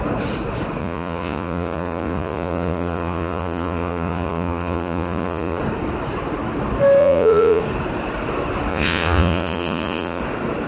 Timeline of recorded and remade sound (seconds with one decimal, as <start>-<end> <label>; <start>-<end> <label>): 0.0-0.8 recorded; 0.8-5.6 remade; 5.6-7.0 recorded; 7.0-7.6 remade; 7.6-8.7 recorded; 8.7-10.2 remade; 10.2-10.7 recorded